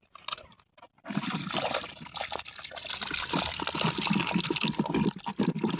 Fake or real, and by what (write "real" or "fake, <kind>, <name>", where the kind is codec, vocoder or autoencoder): real